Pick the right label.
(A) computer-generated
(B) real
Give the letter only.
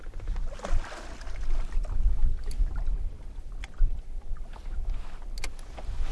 B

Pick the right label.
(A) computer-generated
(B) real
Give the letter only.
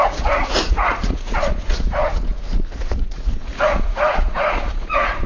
A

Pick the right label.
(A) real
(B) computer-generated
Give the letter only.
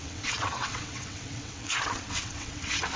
B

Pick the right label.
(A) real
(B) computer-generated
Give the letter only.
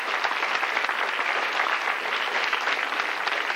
A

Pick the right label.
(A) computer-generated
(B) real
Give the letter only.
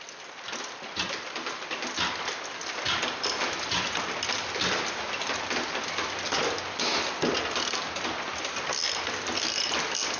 B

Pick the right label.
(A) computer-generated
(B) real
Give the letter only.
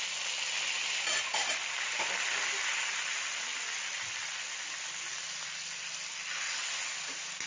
B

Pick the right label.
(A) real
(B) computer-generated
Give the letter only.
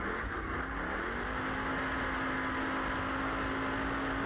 A